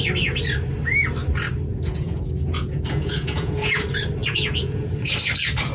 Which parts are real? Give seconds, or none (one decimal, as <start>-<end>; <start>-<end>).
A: 0.0-1.7; 3.8-4.2; 5.1-5.7